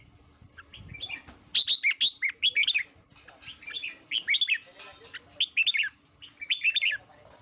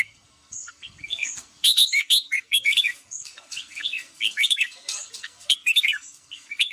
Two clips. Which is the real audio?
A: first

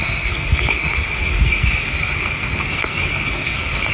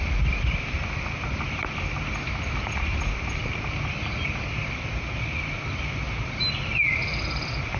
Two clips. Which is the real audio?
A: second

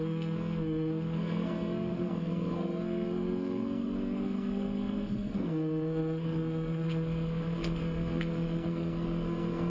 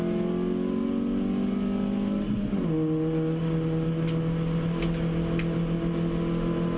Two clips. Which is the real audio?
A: second